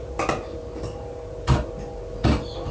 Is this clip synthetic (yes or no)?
no